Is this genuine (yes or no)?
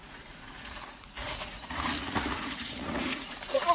no